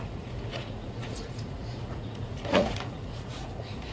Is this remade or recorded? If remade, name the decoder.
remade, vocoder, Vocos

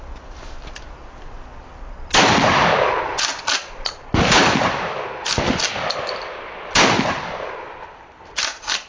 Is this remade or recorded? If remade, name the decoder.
recorded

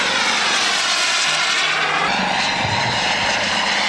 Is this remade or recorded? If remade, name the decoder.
recorded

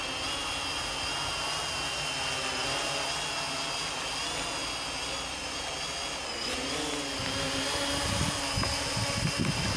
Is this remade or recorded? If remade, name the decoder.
recorded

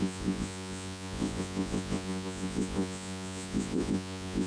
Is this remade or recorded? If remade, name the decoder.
remade, vocoder, Vocos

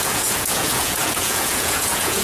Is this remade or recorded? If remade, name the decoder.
remade, vocoder, Vocos